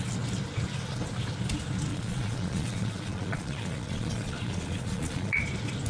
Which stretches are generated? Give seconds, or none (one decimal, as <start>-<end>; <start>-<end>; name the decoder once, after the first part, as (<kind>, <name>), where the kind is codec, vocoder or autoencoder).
1.9-5.4 (vocoder, Vocos)